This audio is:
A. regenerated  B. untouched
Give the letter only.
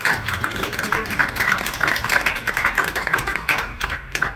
A